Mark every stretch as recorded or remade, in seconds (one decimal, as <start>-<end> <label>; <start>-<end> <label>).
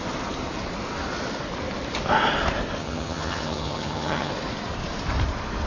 0.0-2.8 recorded; 2.8-4.3 remade; 4.3-5.7 recorded